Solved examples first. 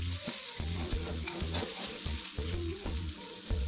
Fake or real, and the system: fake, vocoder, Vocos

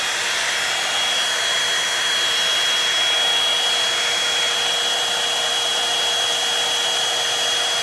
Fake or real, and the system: real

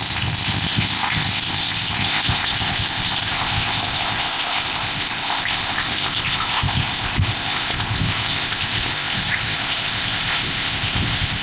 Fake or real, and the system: fake, codec, ZipCodec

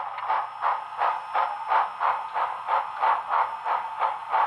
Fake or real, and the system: real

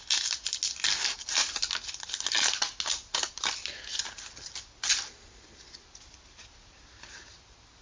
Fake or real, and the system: real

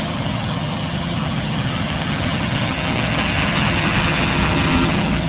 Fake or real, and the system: fake, vocoder, HiFi-GAN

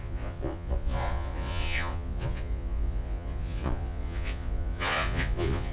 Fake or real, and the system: fake, vocoder, Vocos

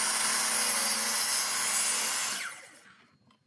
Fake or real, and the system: real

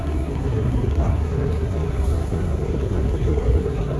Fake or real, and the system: fake, codec, SNAC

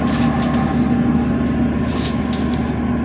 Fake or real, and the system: real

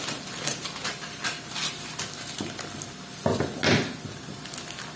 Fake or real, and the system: real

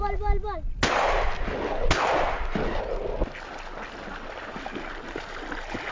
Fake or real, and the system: real